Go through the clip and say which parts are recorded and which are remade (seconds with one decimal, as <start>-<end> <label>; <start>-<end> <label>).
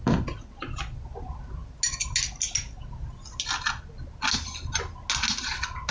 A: 0.0-5.9 recorded